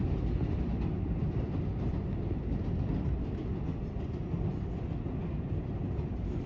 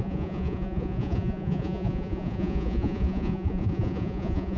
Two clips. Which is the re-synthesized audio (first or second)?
second